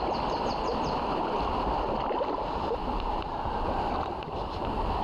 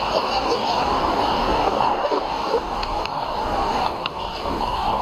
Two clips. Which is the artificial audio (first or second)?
second